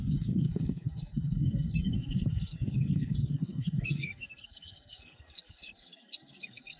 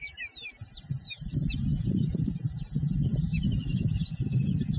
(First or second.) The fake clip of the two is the first